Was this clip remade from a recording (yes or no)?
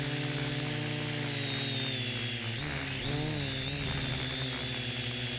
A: no